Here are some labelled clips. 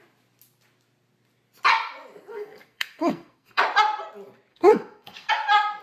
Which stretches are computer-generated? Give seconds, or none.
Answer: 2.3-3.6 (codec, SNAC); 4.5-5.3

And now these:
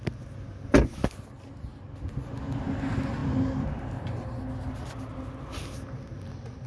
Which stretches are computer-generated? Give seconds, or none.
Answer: none

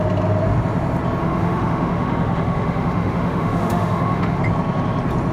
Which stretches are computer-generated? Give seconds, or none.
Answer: 1.2-4.4 (autoencoder, DAC-VAE)

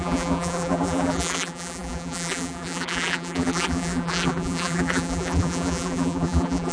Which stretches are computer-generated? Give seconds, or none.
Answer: 0.0-6.7 (vocoder, BigVGAN v2)

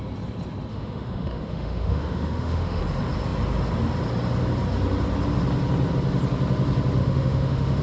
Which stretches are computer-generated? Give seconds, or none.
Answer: 0.7-2.8 (autoencoder, DAC-VAE); 7.0-7.8

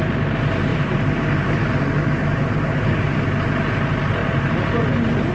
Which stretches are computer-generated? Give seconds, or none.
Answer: 0.7-3.0 (vocoder, BigVGAN v2); 4.2-4.7

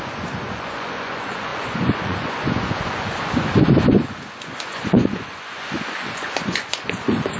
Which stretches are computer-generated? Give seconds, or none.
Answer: 0.0-7.4 (vocoder, Vocos)